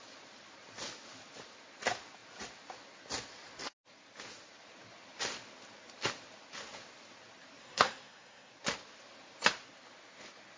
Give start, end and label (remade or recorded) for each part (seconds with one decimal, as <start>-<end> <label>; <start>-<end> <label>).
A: 0.0-7.6 recorded; 7.6-8.5 remade; 8.5-10.6 recorded